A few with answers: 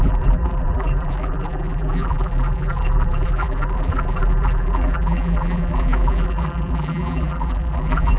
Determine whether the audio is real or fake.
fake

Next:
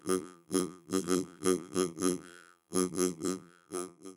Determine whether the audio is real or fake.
fake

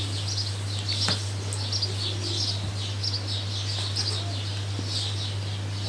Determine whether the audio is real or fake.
real